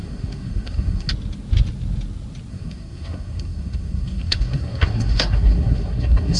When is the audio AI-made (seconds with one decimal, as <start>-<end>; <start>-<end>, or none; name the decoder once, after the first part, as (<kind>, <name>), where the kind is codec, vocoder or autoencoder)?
0.0-1.1 (codec, SNAC); 2.5-6.4